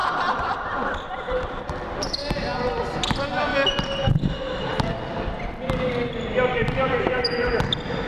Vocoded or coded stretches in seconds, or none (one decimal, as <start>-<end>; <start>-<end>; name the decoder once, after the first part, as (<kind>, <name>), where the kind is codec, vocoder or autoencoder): 0.0-1.6 (vocoder, BigVGAN v2); 3.5-4.7; 6.5-7.6